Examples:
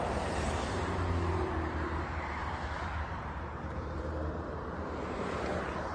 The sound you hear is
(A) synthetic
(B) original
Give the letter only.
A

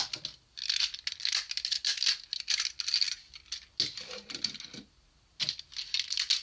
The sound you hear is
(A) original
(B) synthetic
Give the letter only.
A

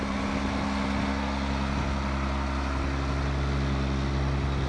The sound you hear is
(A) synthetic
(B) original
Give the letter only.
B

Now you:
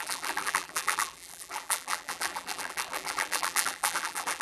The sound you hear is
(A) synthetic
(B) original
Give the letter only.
A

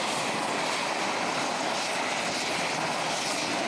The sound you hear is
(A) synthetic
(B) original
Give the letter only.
B